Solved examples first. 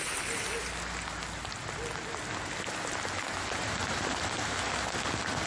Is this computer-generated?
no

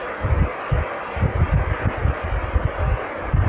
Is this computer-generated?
no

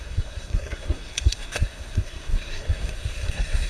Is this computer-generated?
yes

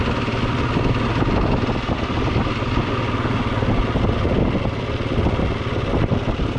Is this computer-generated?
no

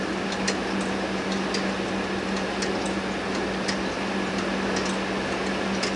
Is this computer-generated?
no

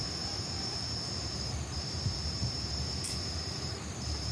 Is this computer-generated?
yes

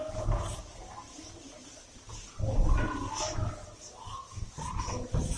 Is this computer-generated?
no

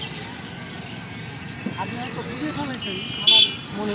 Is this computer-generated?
no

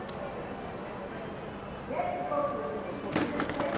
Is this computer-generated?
no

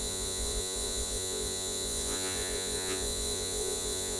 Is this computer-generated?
yes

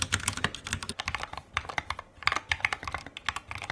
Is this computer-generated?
no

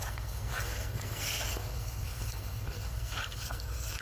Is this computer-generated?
yes